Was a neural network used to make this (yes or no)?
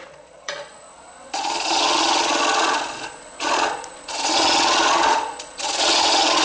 yes